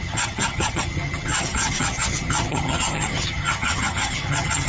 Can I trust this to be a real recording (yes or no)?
no